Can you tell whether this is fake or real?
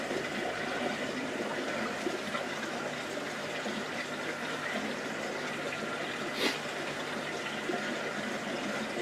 real